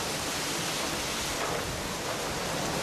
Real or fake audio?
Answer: real